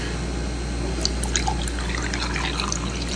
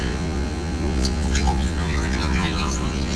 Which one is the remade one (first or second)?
second